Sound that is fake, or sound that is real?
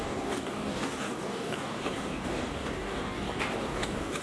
fake